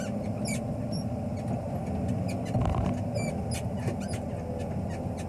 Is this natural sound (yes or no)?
yes